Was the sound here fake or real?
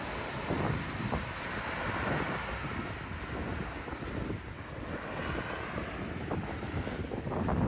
real